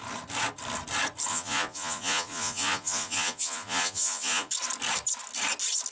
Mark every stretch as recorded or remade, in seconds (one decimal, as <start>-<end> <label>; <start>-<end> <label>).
0.0-1.3 recorded; 1.3-4.5 remade; 4.5-5.9 recorded